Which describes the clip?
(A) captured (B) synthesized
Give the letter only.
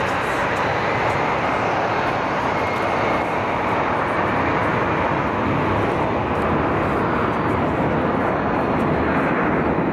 A